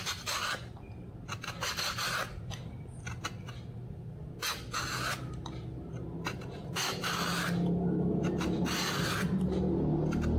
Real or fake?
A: real